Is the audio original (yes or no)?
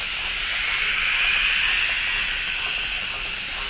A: yes